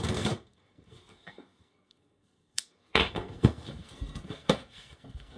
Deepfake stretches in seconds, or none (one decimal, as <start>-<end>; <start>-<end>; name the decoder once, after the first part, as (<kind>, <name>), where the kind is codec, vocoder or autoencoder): 0.0-5.4 (codec, SNAC)